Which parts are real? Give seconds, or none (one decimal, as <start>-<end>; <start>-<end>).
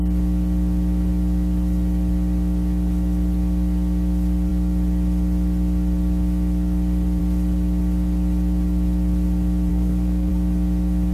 0.0-9.7; 10.3-11.1